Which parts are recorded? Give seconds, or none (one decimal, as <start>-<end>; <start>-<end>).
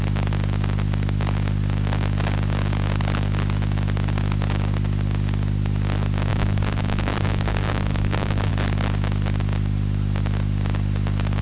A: 0.0-6.3; 8.5-11.4